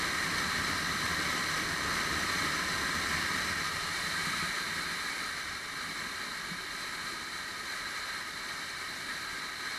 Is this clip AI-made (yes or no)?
no